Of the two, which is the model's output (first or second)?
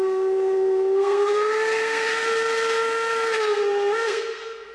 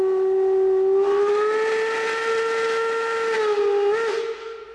first